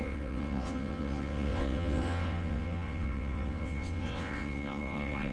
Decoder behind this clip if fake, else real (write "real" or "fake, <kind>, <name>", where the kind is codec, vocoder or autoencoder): fake, vocoder, WaveNeXt